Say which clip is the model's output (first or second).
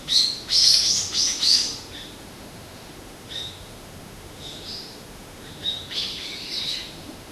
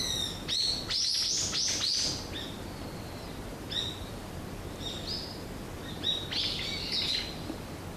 first